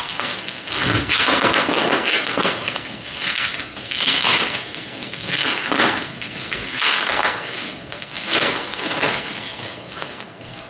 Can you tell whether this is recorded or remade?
remade